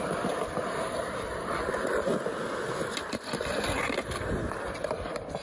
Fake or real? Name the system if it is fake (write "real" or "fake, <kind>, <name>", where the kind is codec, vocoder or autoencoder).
real